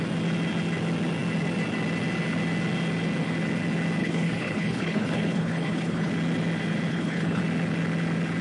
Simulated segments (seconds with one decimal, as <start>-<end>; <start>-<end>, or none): 4.0-6.1; 6.9-7.4